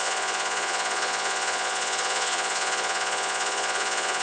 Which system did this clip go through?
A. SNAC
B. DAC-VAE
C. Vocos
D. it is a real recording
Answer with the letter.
C